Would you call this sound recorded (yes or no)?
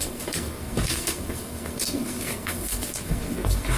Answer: no